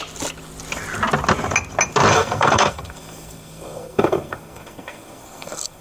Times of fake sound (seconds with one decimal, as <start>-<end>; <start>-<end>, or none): 2.1-5.8

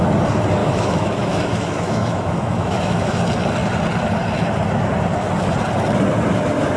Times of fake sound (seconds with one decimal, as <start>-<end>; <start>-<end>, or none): 0.6-3.2

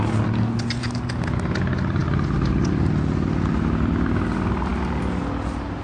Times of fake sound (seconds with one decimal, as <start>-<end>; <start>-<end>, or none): none

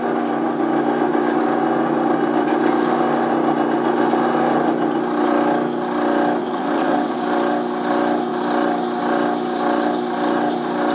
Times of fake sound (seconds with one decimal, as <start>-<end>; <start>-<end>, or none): 6.4-7.2

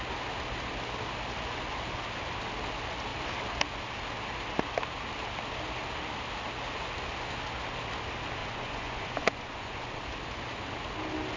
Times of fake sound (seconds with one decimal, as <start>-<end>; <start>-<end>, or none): 8.4-10.0

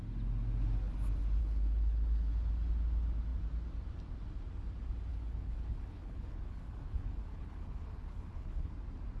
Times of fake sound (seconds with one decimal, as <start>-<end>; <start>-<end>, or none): 1.4-2.3; 5.1-8.7